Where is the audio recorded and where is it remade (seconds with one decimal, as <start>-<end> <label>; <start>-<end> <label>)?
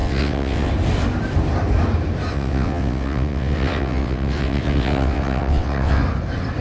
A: 0.0-0.7 remade; 0.7-2.3 recorded; 2.3-6.0 remade; 6.0-6.6 recorded